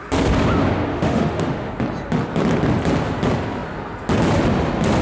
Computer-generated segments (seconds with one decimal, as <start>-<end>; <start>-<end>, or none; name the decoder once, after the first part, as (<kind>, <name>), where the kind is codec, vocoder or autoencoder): 0.9-1.7 (autoencoder, DAC-VAE)